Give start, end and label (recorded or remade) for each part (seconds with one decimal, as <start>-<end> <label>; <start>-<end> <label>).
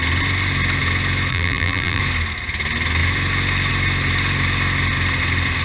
0.0-1.3 recorded; 1.3-2.0 remade; 2.0-5.6 recorded